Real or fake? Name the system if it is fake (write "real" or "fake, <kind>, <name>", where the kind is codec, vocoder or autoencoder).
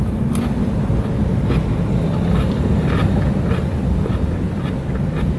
real